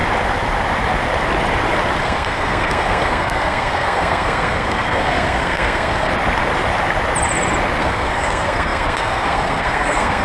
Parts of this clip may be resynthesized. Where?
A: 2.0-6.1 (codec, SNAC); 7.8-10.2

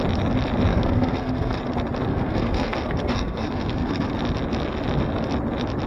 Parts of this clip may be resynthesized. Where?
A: 0.7-1.6 (codec, SNAC); 2.1-4.1

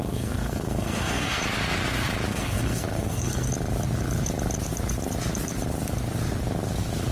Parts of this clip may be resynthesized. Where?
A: 0.0-1.4 (codec, SNAC); 2.3-3.5